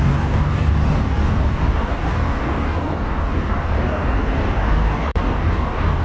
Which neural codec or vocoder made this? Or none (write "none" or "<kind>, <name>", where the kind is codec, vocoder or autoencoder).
codec, DAC